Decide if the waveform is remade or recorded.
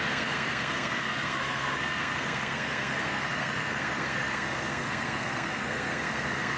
remade